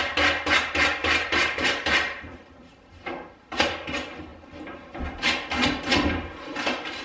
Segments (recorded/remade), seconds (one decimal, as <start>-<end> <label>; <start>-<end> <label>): 0.0-1.0 recorded; 1.0-3.0 remade; 3.0-7.0 recorded